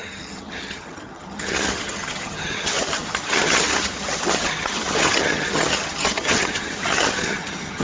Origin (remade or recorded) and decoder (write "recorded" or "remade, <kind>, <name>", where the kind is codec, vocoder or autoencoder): remade, vocoder, HiFi-GAN